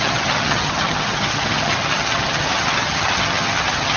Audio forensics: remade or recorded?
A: remade